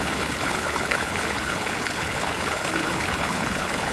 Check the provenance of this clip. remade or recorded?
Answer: remade